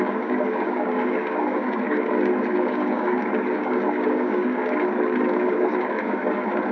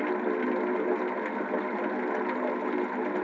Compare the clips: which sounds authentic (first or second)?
second